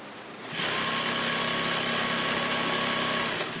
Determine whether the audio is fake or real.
real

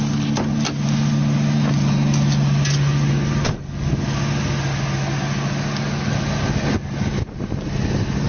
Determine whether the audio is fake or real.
real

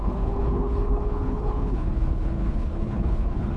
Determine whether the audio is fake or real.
fake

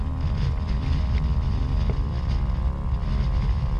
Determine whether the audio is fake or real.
real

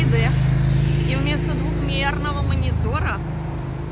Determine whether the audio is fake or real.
real